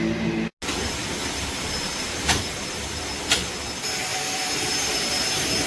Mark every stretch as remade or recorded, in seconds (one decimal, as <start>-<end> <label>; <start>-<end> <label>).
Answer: 0.0-1.2 recorded; 1.2-3.5 remade; 3.5-4.1 recorded; 4.1-5.7 remade